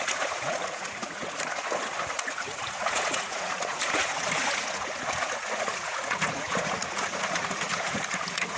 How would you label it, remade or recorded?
remade